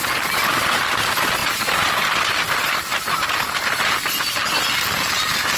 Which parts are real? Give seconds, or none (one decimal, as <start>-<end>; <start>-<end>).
0.0-5.6